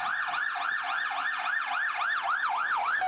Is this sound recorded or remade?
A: recorded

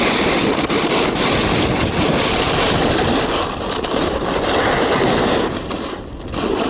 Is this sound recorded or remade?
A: recorded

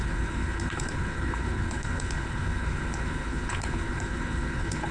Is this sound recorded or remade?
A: remade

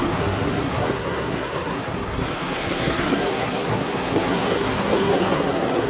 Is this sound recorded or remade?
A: remade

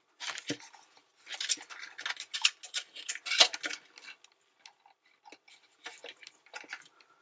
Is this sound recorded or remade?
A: recorded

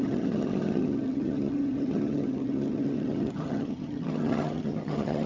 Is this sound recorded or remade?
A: remade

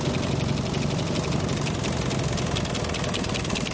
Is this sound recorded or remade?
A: recorded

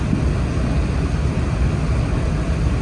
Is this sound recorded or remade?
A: recorded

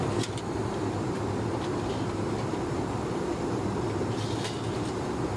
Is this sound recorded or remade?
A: recorded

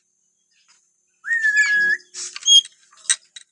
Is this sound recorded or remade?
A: recorded